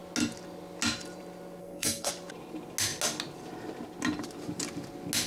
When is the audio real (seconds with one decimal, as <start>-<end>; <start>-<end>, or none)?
0.0-1.6; 2.1-5.3